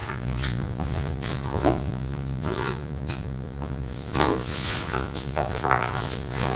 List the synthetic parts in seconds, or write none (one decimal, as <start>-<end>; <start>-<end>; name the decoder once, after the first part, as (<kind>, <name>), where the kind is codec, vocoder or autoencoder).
0.0-6.6 (vocoder, Vocos)